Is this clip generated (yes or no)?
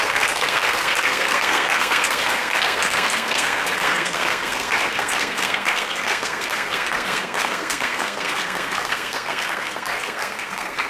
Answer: yes